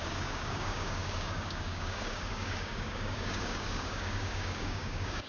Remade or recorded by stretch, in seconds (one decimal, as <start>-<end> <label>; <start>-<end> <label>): 0.0-5.3 remade